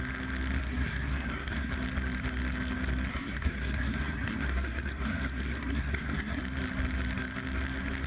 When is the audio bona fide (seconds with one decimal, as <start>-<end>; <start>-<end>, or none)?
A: 0.0-0.6; 1.7-3.1; 6.4-8.1